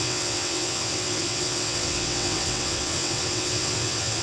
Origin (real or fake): fake